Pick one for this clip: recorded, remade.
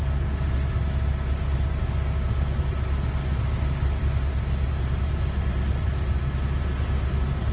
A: recorded